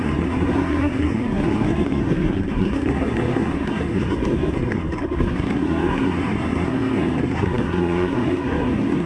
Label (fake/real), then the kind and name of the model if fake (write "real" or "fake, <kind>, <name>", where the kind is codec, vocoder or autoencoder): fake, codec, SNAC